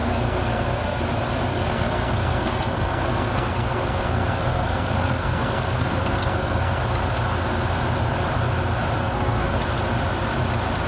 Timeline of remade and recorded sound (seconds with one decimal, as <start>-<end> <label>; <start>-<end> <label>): 0.0-1.0 remade; 1.0-1.5 recorded; 1.5-6.8 remade; 6.8-9.0 recorded; 9.0-9.6 remade; 9.6-10.9 recorded